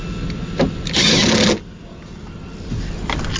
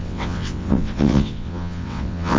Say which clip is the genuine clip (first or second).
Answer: first